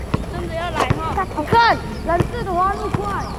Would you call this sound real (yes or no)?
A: yes